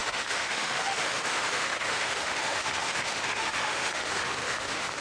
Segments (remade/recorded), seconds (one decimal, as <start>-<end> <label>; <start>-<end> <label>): 0.0-5.0 remade